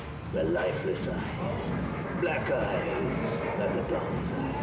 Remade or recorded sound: recorded